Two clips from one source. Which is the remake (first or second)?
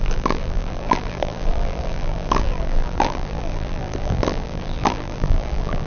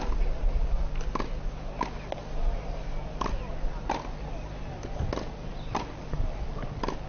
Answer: first